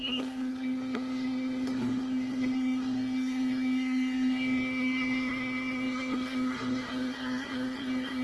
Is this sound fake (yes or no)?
yes